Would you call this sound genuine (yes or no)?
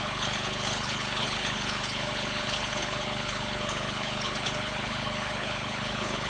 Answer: no